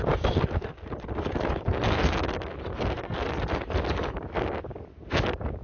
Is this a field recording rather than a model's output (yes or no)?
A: yes